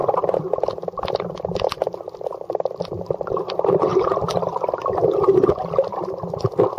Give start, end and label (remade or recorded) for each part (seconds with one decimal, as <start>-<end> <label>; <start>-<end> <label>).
0.0-6.8 recorded